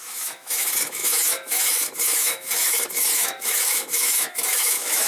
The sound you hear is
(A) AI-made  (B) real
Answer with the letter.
A